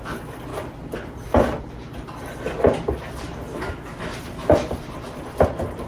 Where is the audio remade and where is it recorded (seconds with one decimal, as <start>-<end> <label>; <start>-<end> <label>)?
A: 0.0-3.5 recorded; 3.5-4.0 remade; 4.0-5.9 recorded